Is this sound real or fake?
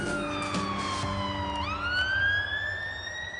real